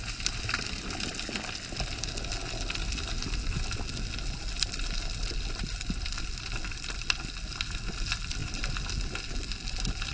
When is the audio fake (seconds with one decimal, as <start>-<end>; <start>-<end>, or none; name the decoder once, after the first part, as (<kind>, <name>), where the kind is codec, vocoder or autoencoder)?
none